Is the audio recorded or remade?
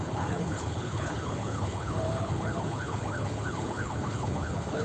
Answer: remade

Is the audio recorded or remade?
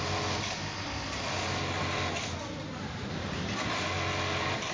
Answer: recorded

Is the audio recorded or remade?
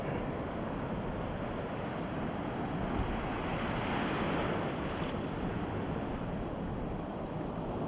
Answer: recorded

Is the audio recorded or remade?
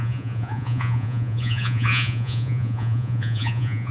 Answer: remade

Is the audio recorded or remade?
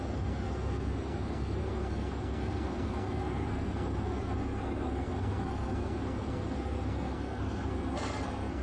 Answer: remade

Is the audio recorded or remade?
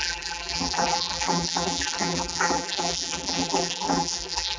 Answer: remade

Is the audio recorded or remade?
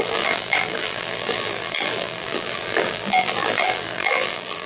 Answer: remade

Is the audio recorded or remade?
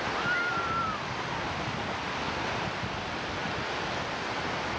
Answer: recorded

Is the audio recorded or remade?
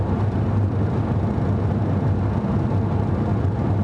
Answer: recorded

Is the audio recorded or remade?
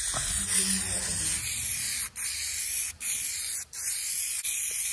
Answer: recorded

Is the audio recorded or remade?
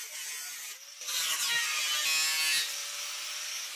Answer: recorded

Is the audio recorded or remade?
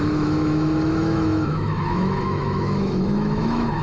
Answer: remade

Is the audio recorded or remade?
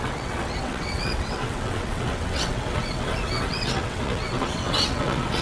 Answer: remade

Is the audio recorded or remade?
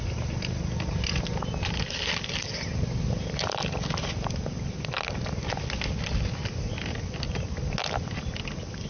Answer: recorded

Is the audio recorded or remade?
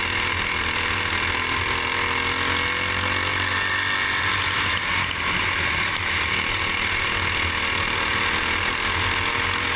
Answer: recorded